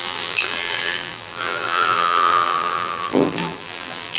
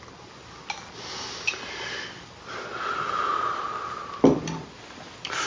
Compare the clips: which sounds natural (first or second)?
second